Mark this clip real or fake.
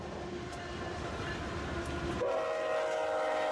real